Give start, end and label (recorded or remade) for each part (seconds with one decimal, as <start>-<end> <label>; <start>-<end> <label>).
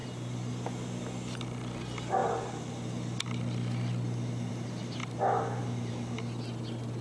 0.0-7.0 recorded